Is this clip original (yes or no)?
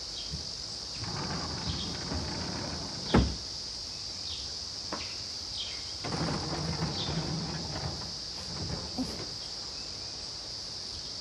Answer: yes